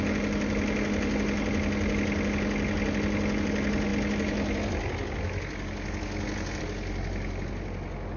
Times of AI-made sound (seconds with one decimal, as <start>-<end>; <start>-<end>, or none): none